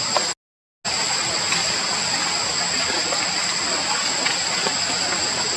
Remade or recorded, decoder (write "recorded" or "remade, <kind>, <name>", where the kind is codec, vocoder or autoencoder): recorded